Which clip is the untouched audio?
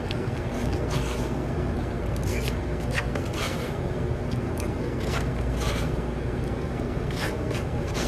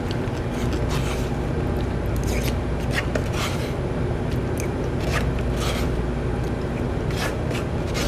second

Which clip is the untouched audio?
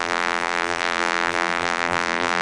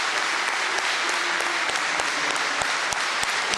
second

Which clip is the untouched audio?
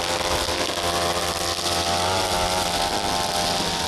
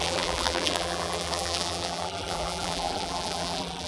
first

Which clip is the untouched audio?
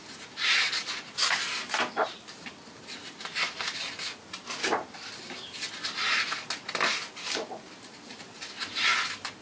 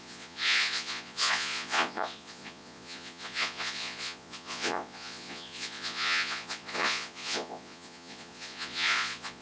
first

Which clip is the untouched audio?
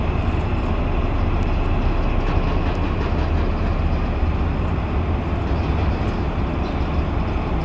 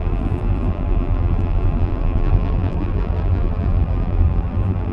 first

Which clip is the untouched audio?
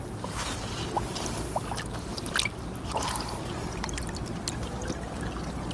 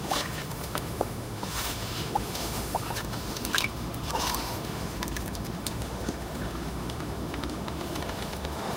first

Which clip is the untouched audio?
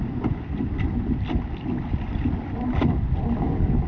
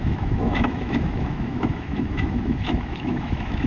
first